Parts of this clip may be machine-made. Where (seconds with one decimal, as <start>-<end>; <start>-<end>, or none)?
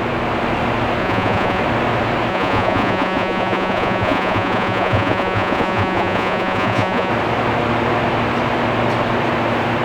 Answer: 1.0-1.6; 2.3-7.1